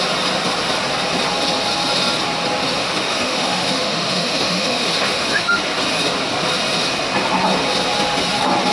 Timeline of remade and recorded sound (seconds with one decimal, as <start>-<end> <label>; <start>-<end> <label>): 0.0-2.8 recorded; 2.8-5.6 remade; 5.6-8.7 recorded